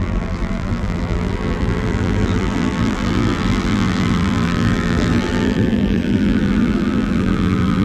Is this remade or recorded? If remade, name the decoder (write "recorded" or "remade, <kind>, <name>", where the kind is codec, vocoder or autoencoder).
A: remade, vocoder, BigVGAN v2